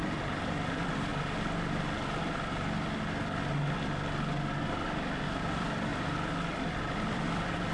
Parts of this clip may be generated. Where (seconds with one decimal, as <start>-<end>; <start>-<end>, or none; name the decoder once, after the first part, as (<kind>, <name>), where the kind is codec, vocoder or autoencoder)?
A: 0.0-1.1 (vocoder, BigVGAN v2); 4.6-7.7

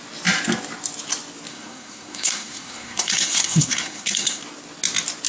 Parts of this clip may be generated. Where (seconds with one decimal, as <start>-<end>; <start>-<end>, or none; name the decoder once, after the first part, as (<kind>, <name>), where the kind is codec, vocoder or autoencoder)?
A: 1.5-4.4 (codec, SNAC)

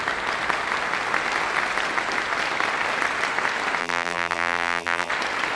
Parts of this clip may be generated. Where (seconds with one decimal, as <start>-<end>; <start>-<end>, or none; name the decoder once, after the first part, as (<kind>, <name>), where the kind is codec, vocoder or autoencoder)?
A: 3.8-5.1 (vocoder, BigVGAN v2)

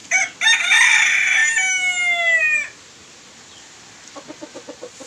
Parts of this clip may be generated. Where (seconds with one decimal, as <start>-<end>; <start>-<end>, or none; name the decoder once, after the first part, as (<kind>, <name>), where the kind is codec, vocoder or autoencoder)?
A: none

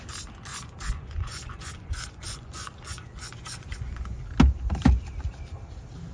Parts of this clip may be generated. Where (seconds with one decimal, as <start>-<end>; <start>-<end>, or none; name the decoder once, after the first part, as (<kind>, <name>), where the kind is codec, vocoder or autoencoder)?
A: 0.5-4.2 (vocoder, Vocos)

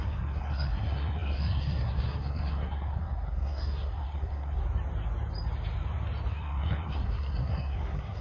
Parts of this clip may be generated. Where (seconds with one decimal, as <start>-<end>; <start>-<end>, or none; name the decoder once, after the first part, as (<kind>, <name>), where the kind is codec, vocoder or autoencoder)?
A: 0.0-4.6 (codec, SNAC); 6.3-8.2

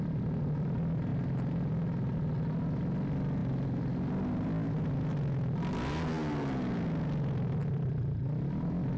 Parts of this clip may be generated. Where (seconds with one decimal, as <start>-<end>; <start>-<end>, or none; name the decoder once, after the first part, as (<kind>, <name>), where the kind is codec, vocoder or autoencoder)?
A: none

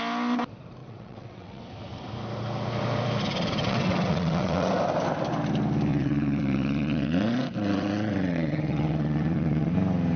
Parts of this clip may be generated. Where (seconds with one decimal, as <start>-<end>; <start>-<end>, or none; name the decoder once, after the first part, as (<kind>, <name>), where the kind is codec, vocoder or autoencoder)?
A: 0.8-1.6 (vocoder, WaveNeXt); 3.6-4.7; 5.9-9.7